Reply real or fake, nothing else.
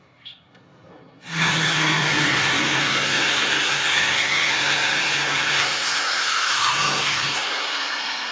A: fake